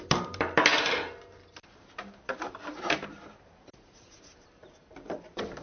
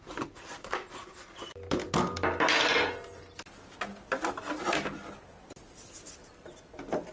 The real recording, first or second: second